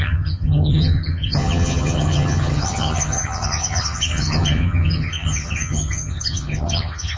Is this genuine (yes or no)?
no